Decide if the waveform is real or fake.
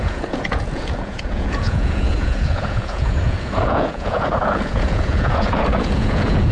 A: fake